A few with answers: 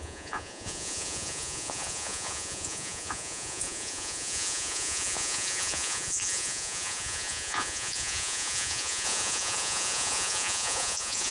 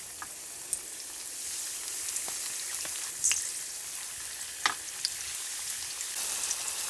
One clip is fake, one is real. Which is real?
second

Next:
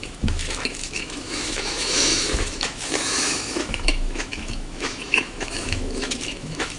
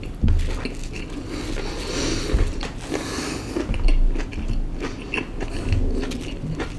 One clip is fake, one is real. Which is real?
second